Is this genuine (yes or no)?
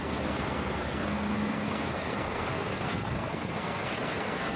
no